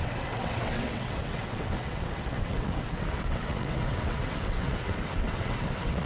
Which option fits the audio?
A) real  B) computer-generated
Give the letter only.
B